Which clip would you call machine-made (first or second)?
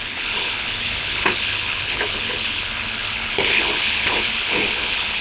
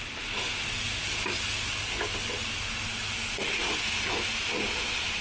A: first